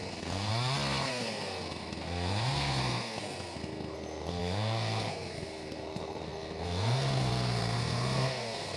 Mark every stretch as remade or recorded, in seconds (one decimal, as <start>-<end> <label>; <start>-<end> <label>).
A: 0.0-0.5 remade; 0.5-1.1 recorded; 1.1-8.8 remade